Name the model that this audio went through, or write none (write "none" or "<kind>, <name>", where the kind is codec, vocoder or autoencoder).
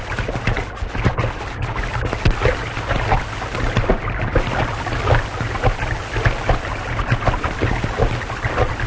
none